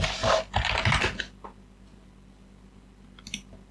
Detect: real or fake real